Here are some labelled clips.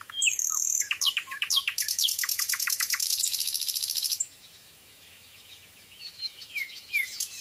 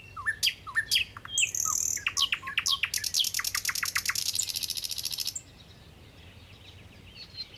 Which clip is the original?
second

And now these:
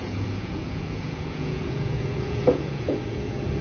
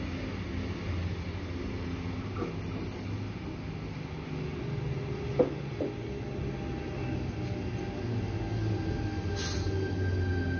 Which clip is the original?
second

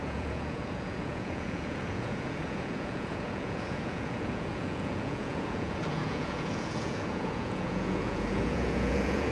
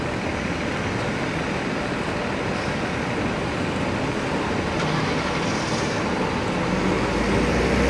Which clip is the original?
second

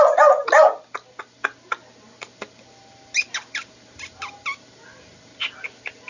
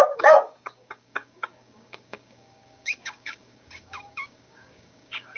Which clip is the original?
first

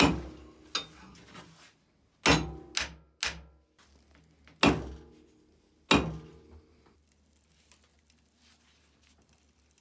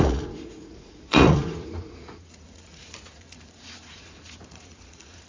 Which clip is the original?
first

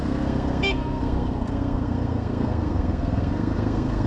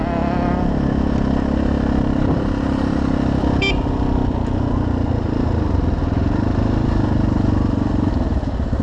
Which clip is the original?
second